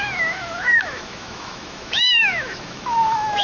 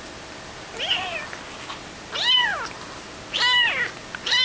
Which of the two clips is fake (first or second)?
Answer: first